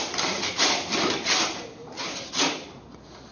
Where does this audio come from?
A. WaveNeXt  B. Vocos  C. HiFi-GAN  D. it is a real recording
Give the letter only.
D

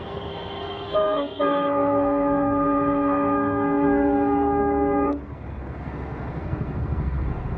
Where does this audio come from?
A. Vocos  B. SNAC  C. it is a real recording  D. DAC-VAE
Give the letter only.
B